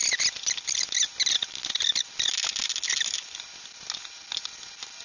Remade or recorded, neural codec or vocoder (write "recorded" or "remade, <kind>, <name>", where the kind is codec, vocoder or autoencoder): recorded